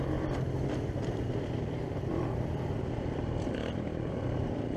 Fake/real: fake